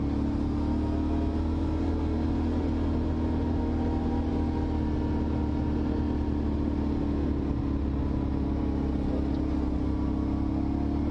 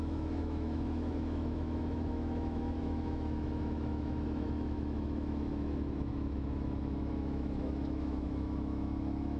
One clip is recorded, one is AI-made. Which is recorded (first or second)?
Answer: first